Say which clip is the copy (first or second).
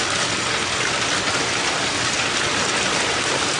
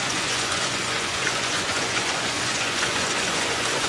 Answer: second